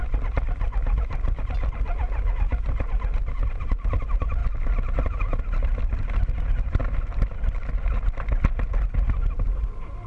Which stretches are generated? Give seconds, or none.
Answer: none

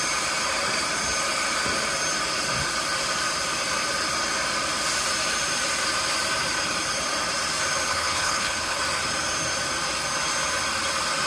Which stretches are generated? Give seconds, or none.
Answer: 7.9-8.8 (codec, HILCodec)

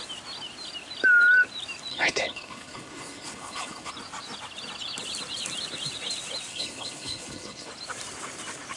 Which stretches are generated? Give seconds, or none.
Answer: 1.9-3.9 (codec, HILCodec); 6.5-7.7

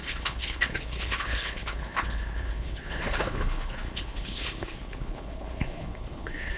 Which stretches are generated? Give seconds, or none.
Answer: 0.0-6.6 (codec, HILCodec)

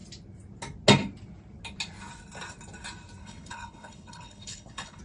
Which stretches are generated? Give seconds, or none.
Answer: 3.2-5.0 (codec, HILCodec)